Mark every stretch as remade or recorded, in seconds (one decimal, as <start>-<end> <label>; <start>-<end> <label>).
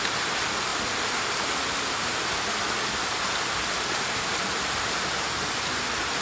0.0-6.2 recorded